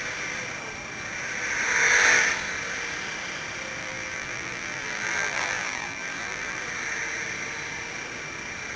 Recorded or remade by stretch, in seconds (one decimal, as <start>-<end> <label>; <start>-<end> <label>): 0.0-3.8 recorded; 3.8-6.6 remade; 6.6-8.8 recorded